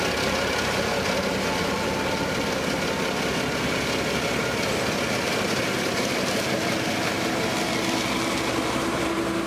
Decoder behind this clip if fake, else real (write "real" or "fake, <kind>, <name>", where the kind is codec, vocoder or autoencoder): real